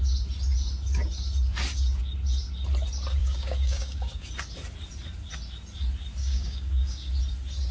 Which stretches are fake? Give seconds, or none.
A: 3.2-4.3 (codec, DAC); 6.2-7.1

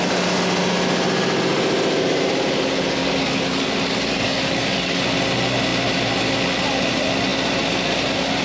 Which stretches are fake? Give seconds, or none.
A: 3.0-5.0 (codec, DAC)

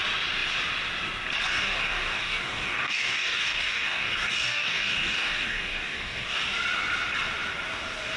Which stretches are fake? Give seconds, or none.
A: 1.5-6.4 (codec, DAC)

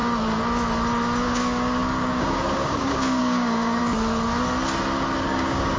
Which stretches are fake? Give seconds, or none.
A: 1.2-3.8 (codec, DAC); 5.2-5.8